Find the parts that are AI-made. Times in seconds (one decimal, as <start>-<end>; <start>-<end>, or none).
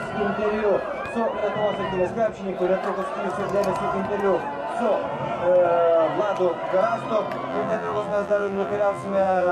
7.5-9.5